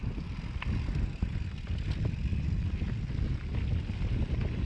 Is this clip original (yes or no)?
yes